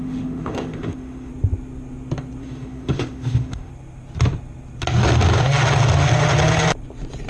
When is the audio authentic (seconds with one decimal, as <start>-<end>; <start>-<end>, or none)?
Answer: 1.3-2.4; 3.7-7.3